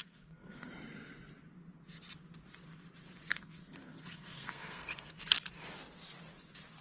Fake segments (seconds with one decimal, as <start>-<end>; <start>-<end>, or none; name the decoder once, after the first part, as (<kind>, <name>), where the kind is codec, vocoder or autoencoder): 0.0-0.7 (codec, SNAC); 3.3-5.2